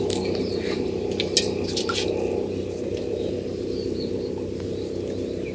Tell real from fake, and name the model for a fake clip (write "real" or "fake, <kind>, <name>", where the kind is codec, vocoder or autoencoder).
real